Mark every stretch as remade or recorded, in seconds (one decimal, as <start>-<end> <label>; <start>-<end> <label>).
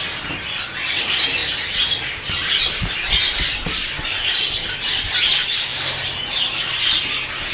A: 0.0-7.5 recorded